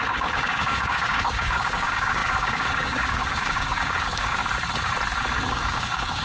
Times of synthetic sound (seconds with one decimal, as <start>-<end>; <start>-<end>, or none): 0.0-4.4; 5.5-6.2